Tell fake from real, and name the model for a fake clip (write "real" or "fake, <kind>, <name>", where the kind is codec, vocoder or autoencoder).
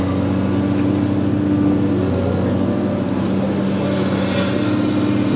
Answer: real